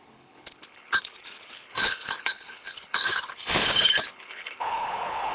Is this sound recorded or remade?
remade